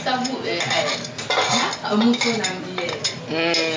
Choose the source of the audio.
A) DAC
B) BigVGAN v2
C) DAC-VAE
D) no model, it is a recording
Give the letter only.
D